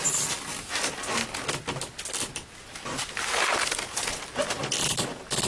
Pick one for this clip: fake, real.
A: real